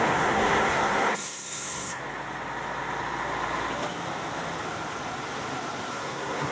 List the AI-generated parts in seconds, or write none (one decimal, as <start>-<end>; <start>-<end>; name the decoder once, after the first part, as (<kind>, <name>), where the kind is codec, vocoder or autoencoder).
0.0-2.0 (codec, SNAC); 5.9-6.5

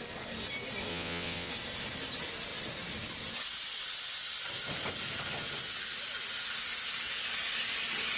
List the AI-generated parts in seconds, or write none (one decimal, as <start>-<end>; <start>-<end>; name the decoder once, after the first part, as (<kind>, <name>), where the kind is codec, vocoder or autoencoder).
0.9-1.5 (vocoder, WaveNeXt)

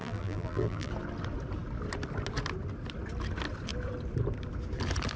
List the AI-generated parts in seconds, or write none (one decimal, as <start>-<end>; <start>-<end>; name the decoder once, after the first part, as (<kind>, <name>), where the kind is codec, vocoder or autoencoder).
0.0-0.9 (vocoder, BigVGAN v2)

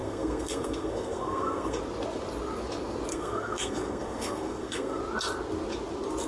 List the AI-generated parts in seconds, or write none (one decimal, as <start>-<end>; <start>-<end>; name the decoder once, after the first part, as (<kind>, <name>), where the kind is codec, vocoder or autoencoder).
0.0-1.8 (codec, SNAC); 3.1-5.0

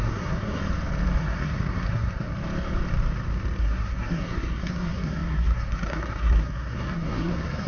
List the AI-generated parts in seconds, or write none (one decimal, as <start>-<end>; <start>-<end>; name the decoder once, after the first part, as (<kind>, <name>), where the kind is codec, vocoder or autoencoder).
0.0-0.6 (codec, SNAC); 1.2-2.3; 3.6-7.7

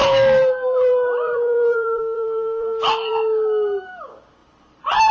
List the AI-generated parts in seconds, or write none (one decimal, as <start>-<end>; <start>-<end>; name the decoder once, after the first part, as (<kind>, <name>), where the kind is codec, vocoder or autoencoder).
0.0-3.1 (vocoder, BigVGAN v2)

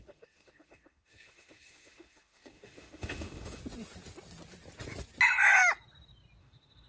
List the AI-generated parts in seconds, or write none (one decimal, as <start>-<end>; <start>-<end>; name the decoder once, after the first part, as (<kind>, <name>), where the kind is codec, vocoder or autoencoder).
0.0-3.6 (autoencoder, DAC-VAE); 6.4-6.9

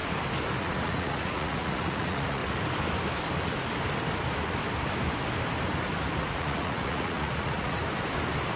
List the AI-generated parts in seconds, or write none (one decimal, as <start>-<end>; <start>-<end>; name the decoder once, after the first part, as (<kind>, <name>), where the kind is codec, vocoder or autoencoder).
0.6-2.4 (vocoder, Vocos); 6.2-7.8